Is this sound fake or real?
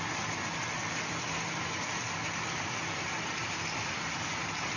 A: real